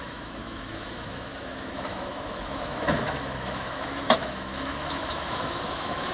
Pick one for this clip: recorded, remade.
remade